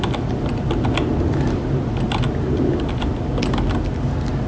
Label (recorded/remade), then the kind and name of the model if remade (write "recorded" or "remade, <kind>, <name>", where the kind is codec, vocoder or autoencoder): recorded